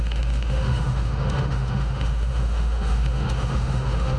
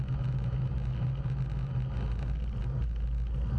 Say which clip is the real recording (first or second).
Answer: second